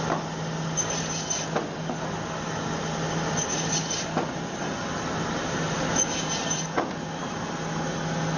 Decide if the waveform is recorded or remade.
recorded